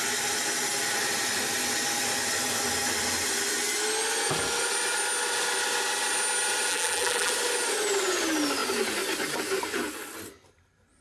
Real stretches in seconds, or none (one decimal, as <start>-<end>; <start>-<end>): 0.0-6.7; 7.3-11.0